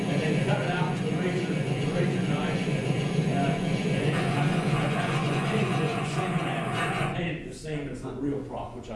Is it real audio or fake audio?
fake